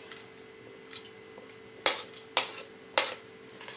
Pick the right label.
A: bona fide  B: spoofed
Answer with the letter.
A